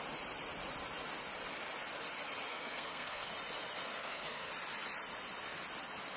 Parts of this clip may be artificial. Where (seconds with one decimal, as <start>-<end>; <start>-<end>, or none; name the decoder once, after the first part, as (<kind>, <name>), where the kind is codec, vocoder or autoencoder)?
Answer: 2.5-3.3 (codec, SNAC); 4.0-4.5